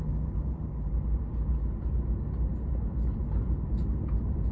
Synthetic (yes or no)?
no